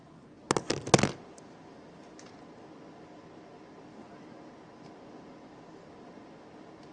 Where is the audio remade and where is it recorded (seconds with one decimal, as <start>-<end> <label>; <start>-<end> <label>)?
0.0-1.3 recorded; 1.3-2.1 remade; 2.1-6.9 recorded